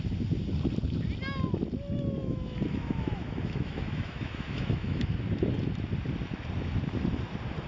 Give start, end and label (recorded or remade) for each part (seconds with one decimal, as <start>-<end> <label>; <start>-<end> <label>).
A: 0.0-2.2 recorded; 2.2-5.1 remade; 5.1-7.7 recorded